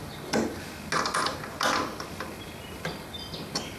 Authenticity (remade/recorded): recorded